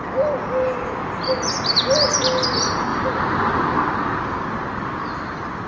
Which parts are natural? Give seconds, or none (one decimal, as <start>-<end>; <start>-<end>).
0.0-2.9